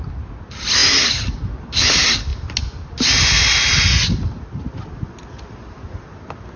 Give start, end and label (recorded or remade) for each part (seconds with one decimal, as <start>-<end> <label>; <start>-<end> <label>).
0.0-6.6 recorded